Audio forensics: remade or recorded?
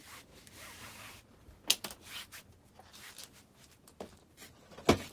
recorded